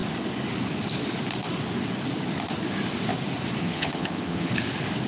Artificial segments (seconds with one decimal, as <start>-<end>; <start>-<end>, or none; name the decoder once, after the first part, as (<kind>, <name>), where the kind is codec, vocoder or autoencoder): 3.6-4.5 (vocoder, HiFi-GAN)